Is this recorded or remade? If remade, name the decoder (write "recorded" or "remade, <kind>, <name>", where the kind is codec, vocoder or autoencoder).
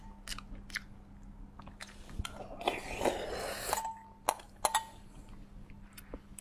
recorded